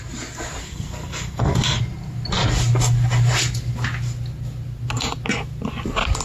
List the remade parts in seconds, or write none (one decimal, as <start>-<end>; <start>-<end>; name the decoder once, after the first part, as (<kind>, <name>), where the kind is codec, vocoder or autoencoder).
0.6-1.8 (codec, SNAC)